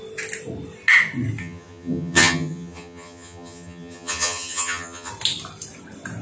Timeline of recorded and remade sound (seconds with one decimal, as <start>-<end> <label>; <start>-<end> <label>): 0.0-1.4 recorded; 1.4-5.1 remade; 5.1-6.2 recorded